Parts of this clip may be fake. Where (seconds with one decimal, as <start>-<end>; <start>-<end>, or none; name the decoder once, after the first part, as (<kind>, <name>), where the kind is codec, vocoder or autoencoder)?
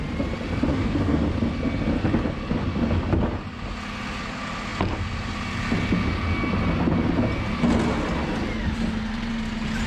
0.7-1.3 (codec, DAC)